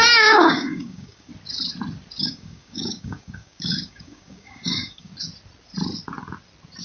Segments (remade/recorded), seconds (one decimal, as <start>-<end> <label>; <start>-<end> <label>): 0.0-1.3 remade; 1.3-2.2 recorded; 2.2-5.1 remade; 5.1-6.8 recorded